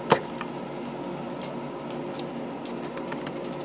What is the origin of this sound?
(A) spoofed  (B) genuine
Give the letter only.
B